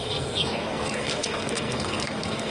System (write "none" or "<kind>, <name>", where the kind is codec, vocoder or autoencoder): codec, SNAC